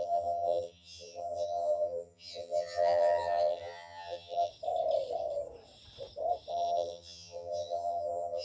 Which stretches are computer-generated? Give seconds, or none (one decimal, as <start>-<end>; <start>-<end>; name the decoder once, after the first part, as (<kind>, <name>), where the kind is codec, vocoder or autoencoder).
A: 0.0-4.5 (vocoder, HiFi-GAN); 6.5-8.4